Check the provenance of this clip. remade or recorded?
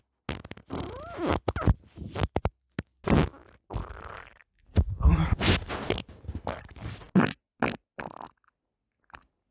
recorded